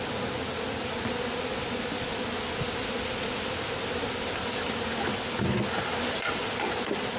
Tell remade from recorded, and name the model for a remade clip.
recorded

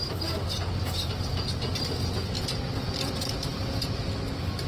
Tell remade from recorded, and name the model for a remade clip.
recorded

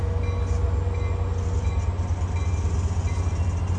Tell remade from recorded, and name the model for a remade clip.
recorded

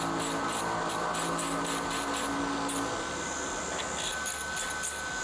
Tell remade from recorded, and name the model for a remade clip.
recorded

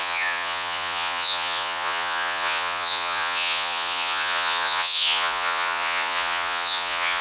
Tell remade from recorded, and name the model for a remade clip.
remade, vocoder, Vocos